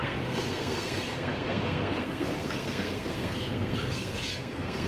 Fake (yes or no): yes